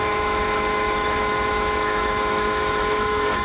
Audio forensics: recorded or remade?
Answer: remade